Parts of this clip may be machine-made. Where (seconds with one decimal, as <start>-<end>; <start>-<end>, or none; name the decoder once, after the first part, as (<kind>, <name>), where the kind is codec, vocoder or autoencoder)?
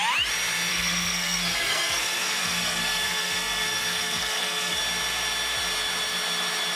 0.7-4.8 (codec, SNAC)